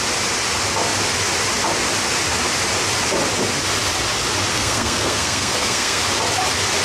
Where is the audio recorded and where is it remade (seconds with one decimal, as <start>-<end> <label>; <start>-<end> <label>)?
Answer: 0.0-4.5 recorded; 4.5-6.0 remade; 6.0-6.8 recorded